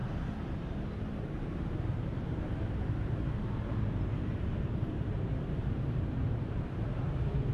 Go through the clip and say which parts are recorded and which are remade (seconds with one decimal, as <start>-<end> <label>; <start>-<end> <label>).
0.0-7.5 remade